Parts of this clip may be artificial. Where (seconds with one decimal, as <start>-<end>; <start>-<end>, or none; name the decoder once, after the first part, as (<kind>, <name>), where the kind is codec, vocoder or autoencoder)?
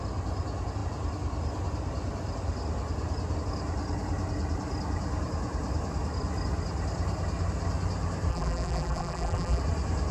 8.3-9.6 (vocoder, BigVGAN v2)